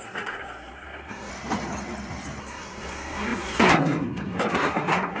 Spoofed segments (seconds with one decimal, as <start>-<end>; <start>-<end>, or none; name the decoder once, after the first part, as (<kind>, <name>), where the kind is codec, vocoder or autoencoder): 0.0-1.3 (codec, SNAC); 2.4-5.2